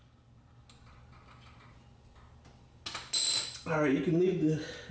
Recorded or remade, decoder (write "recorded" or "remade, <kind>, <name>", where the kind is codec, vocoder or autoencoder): recorded